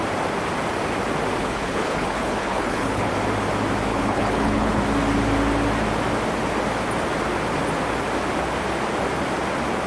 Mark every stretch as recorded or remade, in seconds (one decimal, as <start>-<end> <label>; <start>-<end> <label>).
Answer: 0.0-1.4 recorded; 1.4-3.1 remade; 3.1-3.9 recorded; 3.9-4.8 remade; 4.8-9.9 recorded